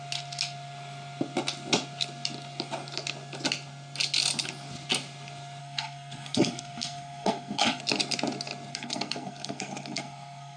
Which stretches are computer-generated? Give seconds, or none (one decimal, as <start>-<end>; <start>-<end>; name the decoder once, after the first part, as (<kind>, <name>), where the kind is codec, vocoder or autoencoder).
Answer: 5.6-7.8 (codec, SNAC); 8.7-10.6